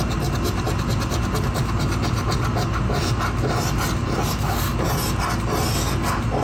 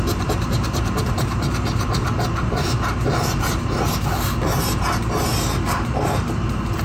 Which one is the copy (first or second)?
second